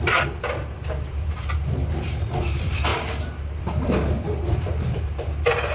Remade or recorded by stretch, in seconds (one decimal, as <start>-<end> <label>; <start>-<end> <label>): 0.0-5.7 remade